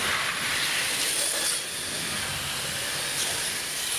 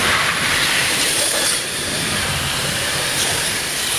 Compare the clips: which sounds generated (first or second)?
second